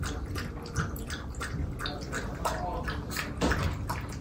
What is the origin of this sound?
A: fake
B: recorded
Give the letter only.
B